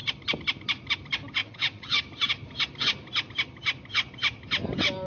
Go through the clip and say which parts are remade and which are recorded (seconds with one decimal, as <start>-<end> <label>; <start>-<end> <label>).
0.0-1.4 recorded; 1.4-2.0 remade; 2.0-5.1 recorded